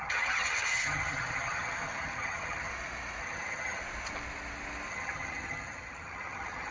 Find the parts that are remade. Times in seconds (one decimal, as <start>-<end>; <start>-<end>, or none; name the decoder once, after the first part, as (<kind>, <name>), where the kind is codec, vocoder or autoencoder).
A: 0.0-2.7 (vocoder, HiFi-GAN); 3.2-3.8; 4.9-6.7